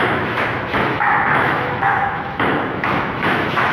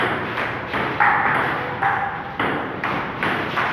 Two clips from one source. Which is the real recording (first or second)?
second